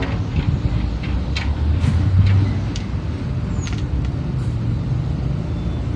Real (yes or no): yes